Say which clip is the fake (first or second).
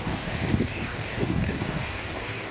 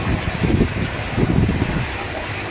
first